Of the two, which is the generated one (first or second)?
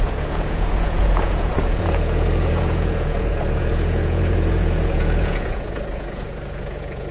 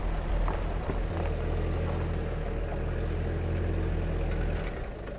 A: first